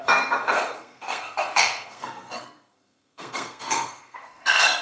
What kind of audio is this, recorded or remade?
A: remade